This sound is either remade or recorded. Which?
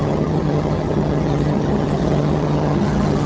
remade